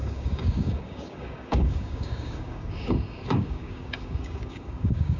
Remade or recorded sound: remade